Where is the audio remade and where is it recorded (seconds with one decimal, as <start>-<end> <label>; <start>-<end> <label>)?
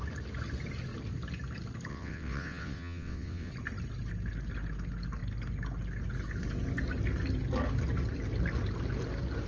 0.0-1.9 recorded; 1.9-3.5 remade; 3.5-9.5 recorded